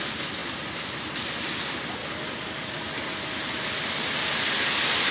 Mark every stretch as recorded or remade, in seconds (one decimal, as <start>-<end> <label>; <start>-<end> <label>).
0.0-2.0 recorded; 2.0-2.9 remade; 2.9-5.1 recorded